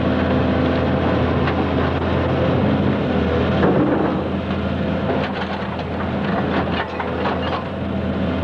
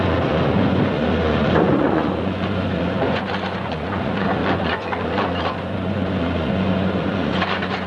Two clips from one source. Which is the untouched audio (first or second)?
first